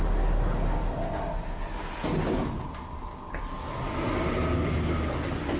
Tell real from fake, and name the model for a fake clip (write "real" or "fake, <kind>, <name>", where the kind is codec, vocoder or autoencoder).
real